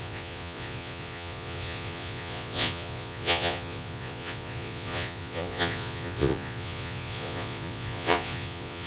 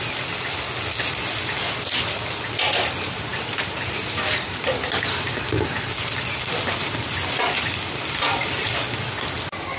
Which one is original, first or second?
second